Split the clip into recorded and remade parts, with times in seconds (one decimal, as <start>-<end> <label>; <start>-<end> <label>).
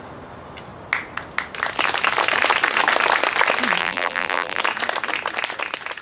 0.0-3.8 recorded; 3.8-4.6 remade; 4.6-6.0 recorded